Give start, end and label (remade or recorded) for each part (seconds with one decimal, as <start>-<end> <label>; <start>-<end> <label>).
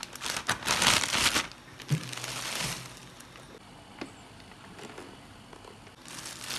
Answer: 0.0-6.6 recorded